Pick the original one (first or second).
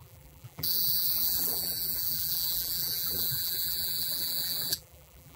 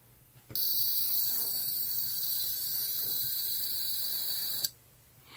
second